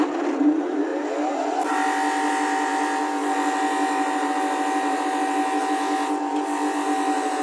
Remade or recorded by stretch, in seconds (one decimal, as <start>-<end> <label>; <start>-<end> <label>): 0.0-7.4 recorded